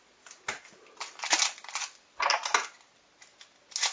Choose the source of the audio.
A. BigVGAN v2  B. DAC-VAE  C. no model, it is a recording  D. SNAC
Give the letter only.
C